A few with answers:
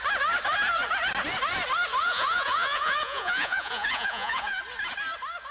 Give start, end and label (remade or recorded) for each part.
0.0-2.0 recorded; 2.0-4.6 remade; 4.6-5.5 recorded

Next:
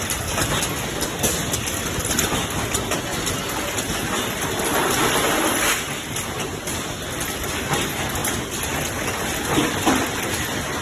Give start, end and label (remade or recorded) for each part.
0.0-10.8 recorded

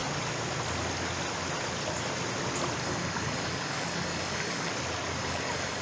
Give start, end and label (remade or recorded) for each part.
0.0-2.8 recorded; 2.8-4.7 remade; 4.7-5.2 recorded; 5.2-5.8 remade

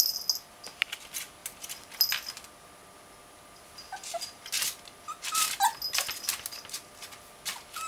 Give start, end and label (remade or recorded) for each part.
0.0-7.9 recorded